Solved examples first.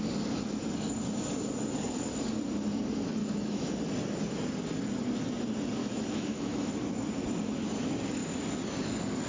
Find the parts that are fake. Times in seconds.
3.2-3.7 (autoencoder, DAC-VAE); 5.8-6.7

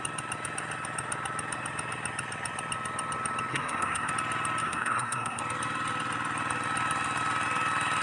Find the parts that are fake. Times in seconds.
3.5-4.1 (codec, SNAC); 4.6-5.4